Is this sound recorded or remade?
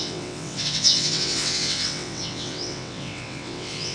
remade